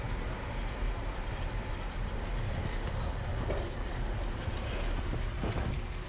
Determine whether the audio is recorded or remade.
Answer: recorded